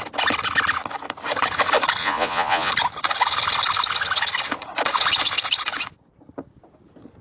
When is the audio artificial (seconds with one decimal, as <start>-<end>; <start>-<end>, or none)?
2.0-2.7